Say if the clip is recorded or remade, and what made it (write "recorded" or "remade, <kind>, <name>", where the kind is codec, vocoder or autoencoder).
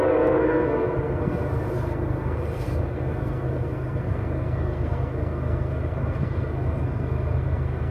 remade, codec, SNAC